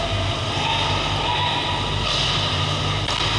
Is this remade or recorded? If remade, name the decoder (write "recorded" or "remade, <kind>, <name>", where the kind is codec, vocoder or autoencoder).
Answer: recorded